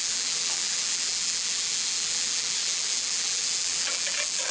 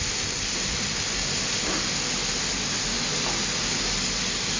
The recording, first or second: second